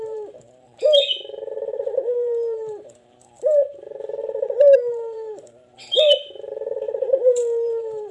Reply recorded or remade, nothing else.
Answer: remade